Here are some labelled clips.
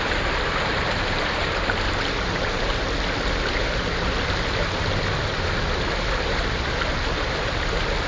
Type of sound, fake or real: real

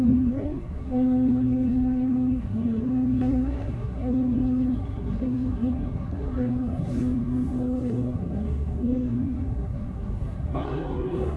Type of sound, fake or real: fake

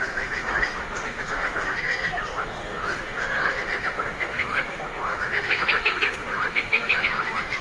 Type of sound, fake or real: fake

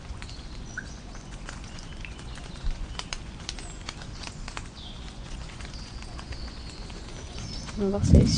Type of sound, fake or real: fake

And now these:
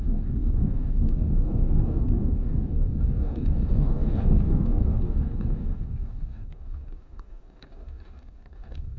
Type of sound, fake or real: fake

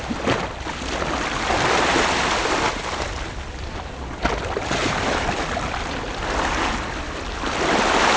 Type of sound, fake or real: real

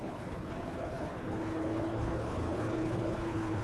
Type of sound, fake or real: fake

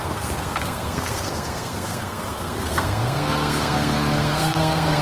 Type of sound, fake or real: fake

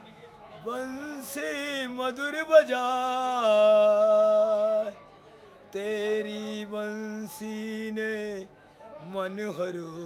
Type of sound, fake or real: fake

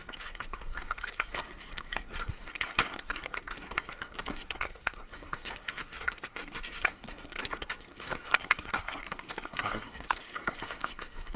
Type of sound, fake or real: fake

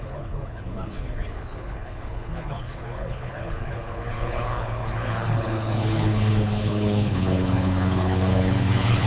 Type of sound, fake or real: fake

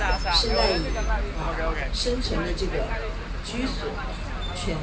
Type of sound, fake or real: real